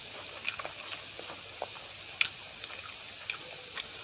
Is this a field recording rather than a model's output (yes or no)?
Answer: yes